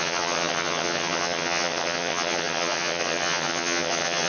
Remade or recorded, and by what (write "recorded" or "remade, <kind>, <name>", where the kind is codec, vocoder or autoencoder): remade, vocoder, HiFi-GAN